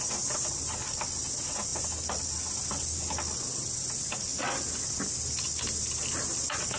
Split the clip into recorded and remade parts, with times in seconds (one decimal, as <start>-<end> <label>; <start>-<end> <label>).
0.0-6.8 recorded